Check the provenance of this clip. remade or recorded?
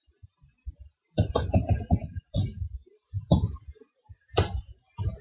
remade